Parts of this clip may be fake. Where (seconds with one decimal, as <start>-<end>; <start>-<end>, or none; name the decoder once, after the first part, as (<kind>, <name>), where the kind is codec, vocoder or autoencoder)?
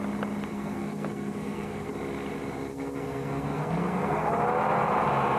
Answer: 0.5-1.9 (codec, SNAC); 2.7-4.3